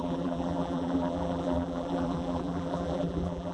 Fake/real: fake